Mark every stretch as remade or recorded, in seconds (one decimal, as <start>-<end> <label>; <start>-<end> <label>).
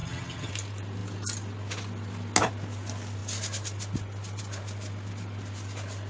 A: 0.0-0.5 remade; 0.5-6.1 recorded